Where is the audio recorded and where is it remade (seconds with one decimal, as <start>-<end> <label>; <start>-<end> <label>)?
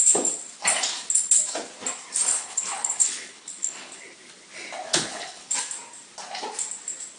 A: 0.0-2.3 recorded; 2.3-4.0 remade; 4.0-4.9 recorded; 4.9-5.5 remade; 5.5-7.2 recorded